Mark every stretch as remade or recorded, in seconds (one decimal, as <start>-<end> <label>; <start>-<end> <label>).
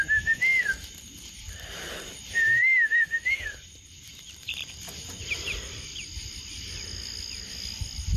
0.0-0.5 recorded; 0.5-4.8 remade; 4.8-8.2 recorded